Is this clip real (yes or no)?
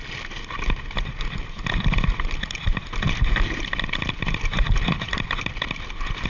yes